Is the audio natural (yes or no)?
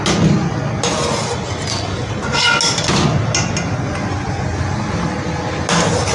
yes